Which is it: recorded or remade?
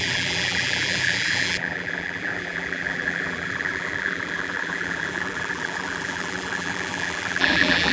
remade